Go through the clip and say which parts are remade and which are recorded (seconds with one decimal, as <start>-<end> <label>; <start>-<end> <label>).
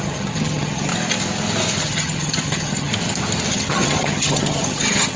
0.0-0.9 remade; 0.9-1.8 recorded; 1.8-2.9 remade; 2.9-3.5 recorded; 3.5-5.2 remade